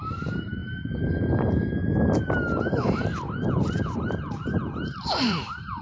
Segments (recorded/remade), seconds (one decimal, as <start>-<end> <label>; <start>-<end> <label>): 0.0-0.6 remade; 0.6-1.1 recorded; 1.1-1.8 remade; 1.8-3.7 recorded; 3.7-5.8 remade